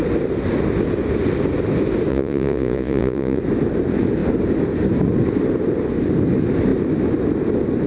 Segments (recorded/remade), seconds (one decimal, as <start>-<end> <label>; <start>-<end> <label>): 0.0-2.1 recorded; 2.1-3.4 remade; 3.4-7.9 recorded